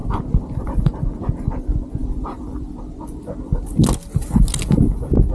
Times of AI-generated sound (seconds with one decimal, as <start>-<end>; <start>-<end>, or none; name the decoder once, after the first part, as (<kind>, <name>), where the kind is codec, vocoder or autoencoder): 2.0-3.8 (vocoder, BigVGAN v2)